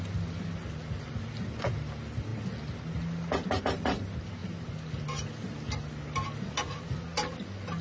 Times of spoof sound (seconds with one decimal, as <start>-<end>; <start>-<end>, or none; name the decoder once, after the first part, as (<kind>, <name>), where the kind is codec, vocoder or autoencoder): none